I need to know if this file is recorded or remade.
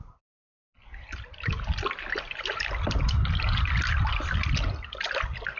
recorded